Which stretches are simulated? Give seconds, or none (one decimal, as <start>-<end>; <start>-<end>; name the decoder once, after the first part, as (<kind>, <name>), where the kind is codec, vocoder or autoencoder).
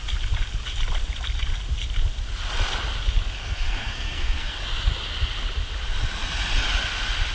3.4-4.6 (codec, SNAC)